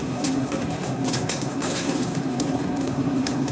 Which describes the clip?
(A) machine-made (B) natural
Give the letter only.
A